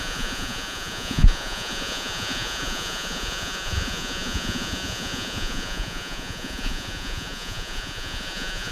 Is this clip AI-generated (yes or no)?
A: yes